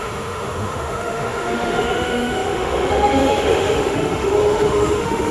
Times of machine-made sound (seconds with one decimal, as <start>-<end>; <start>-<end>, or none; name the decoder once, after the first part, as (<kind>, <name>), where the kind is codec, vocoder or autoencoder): 0.0-5.3 (autoencoder, DAC-VAE)